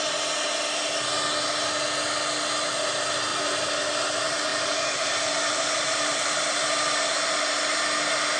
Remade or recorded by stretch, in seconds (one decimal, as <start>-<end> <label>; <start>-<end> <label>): 0.0-3.3 recorded; 3.3-3.8 remade; 3.8-4.5 recorded; 4.5-7.8 remade; 7.8-8.4 recorded